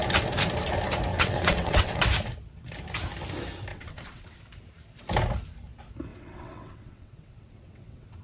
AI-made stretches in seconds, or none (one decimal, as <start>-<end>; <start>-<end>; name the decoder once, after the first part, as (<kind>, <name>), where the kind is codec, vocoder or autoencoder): 1.1-2.0 (vocoder, WaveNeXt); 3.7-4.4; 6.1-8.2